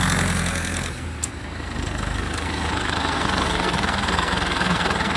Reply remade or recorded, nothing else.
remade